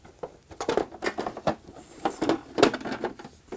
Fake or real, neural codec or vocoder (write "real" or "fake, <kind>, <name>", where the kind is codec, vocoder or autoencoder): real